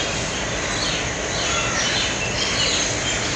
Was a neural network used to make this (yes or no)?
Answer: no